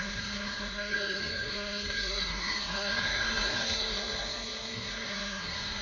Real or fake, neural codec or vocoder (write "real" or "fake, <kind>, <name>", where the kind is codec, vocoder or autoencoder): fake, codec, SNAC